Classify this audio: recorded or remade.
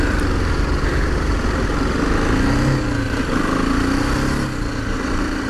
recorded